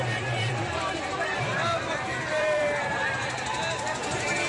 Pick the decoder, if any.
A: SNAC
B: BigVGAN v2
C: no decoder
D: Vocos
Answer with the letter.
B